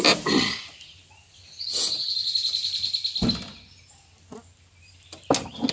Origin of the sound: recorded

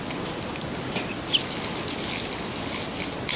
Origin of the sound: recorded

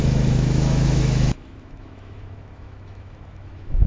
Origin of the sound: remade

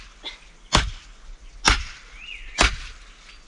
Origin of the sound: recorded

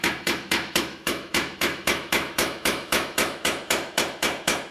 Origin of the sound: remade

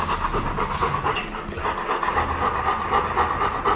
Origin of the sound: recorded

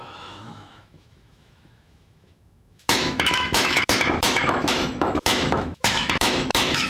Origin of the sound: remade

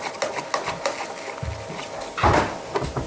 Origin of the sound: recorded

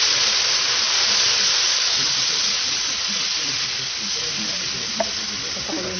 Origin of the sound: recorded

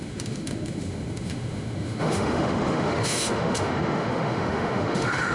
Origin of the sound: remade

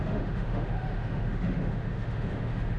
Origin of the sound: remade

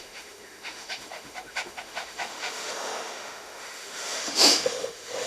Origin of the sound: remade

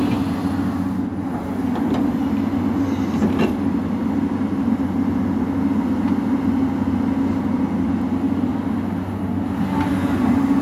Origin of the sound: recorded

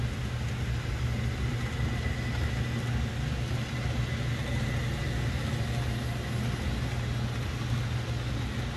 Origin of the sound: recorded